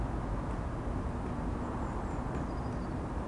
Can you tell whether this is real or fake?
real